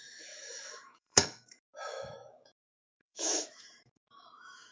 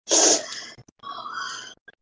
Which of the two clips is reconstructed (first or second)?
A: first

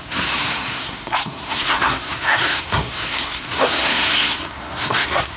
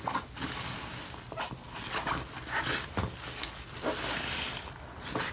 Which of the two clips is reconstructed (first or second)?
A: first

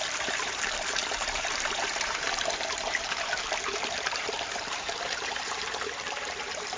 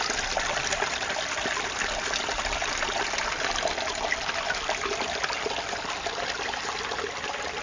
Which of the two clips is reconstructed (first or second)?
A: first